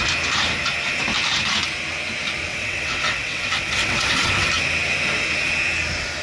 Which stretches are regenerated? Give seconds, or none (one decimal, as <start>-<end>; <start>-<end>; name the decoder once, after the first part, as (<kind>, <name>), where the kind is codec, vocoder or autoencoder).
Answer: 2.5-4.5 (vocoder, WaveNeXt)